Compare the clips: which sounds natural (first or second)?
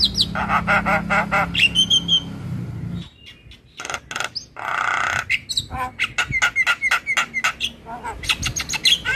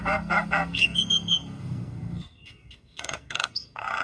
first